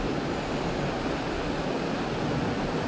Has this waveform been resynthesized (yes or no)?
no